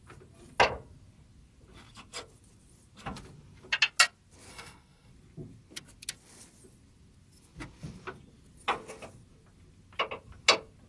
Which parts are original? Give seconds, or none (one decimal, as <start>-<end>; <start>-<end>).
0.0-4.5; 5.1-10.9